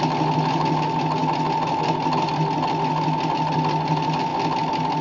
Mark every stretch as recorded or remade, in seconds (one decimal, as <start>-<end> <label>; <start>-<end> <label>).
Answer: 0.0-5.0 recorded